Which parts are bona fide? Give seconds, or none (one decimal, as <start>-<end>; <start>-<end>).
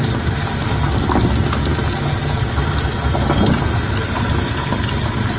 0.0-5.4